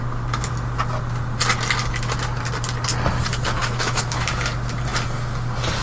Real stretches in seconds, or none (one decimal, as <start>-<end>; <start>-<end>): 0.0-3.6; 4.3-5.8